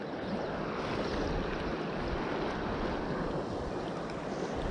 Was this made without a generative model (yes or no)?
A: yes